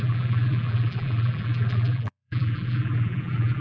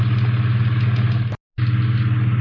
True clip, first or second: second